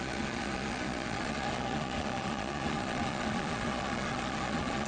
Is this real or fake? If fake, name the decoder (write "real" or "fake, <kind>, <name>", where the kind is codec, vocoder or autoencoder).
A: fake, vocoder, Vocos